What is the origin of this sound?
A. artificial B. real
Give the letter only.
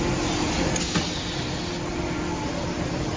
B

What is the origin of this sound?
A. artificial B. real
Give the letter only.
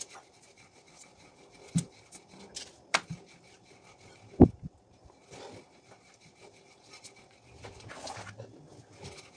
B